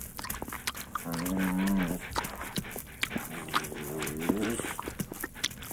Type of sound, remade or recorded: recorded